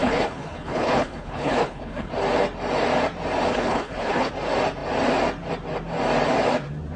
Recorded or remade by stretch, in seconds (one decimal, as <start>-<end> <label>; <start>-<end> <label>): 0.0-2.1 remade; 2.1-3.5 recorded; 3.5-4.3 remade; 4.3-7.0 recorded